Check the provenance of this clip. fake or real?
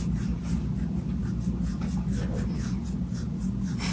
real